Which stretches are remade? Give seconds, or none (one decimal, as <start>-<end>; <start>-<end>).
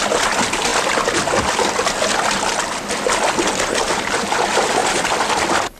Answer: none